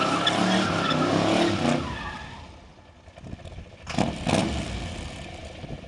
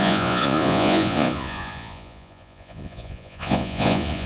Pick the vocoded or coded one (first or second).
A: second